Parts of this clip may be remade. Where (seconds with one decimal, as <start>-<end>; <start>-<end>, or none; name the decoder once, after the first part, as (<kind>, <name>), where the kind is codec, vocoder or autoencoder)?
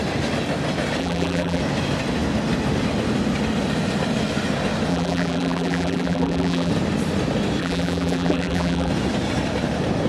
1.0-1.6 (vocoder, BigVGAN v2); 4.9-6.7; 7.6-8.9